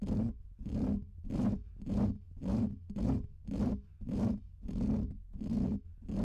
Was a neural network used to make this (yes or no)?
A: no